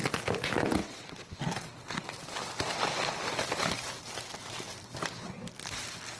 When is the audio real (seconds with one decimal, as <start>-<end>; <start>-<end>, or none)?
0.0-0.8; 1.4-6.2